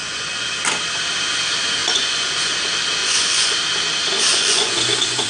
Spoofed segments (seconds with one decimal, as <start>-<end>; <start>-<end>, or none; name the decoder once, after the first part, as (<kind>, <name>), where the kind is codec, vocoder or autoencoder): 0.0-0.5 (vocoder, Vocos); 1.8-2.5; 3.0-3.6; 4.3-5.3